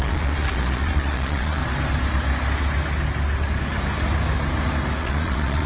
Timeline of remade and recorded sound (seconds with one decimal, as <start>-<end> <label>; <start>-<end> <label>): 0.0-1.6 remade; 1.6-5.0 recorded; 5.0-5.7 remade